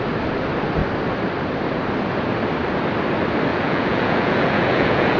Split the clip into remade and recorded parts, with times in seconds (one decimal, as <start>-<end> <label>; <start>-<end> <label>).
0.0-3.5 recorded; 3.5-5.2 remade